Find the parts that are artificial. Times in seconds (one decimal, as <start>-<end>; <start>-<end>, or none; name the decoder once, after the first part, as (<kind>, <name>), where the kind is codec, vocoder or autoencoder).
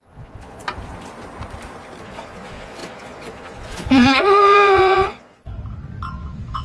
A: 0.0-0.6 (vocoder, Vocos); 2.0-5.6; 6.1-6.6